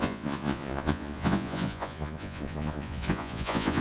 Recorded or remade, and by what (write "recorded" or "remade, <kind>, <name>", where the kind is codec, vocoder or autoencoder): remade, vocoder, Vocos